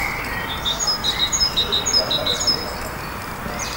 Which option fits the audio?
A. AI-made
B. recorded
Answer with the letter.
B